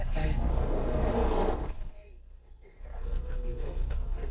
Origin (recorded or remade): remade